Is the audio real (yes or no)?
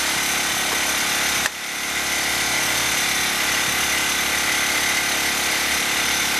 yes